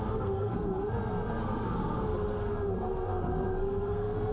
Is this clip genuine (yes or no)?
no